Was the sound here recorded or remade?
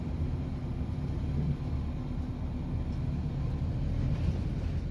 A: recorded